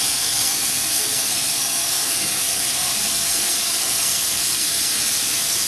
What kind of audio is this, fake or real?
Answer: fake